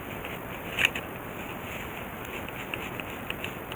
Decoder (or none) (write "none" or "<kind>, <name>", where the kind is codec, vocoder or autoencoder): none